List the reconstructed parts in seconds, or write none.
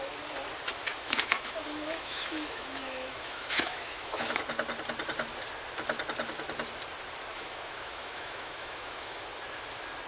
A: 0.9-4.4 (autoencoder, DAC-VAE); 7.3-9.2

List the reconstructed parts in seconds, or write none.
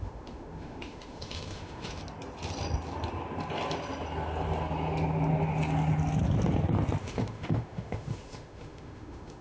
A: 0.0-2.0 (autoencoder, DAC-VAE); 7.0-9.4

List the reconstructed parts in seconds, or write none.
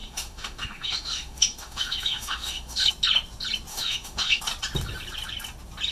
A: 0.0-2.9 (autoencoder, DAC-VAE); 3.7-4.4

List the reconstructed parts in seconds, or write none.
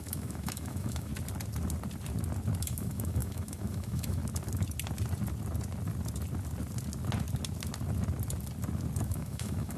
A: 0.0-1.1 (autoencoder, DAC-VAE); 2.6-4.2; 9.0-9.8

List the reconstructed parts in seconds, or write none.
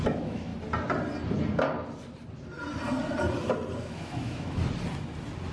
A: 0.0-0.5 (autoencoder, DAC-VAE); 3.8-4.6